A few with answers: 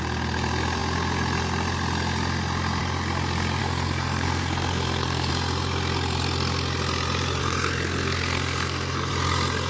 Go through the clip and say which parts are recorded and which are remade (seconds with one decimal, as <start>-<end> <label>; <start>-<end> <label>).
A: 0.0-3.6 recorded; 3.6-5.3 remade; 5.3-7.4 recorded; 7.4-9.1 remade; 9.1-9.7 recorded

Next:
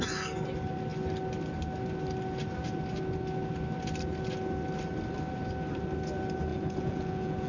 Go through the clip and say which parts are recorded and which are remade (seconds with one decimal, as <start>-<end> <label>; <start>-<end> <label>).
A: 0.0-6.5 recorded; 6.5-7.5 remade

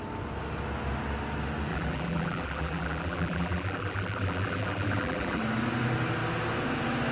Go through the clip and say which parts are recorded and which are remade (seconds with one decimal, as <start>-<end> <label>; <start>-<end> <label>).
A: 0.0-1.7 recorded; 1.7-5.4 remade; 5.4-7.1 recorded

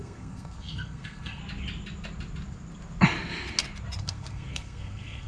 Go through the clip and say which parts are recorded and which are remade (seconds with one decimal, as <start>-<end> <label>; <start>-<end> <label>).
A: 0.0-1.4 remade; 1.4-4.0 recorded; 4.0-5.3 remade

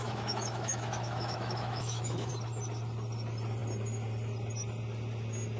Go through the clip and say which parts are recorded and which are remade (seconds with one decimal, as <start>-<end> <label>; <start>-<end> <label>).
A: 0.0-2.3 remade; 2.3-5.6 recorded

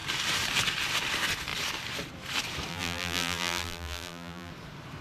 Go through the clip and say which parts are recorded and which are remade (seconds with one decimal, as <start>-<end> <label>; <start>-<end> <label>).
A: 0.0-2.7 recorded; 2.7-4.5 remade; 4.5-5.0 recorded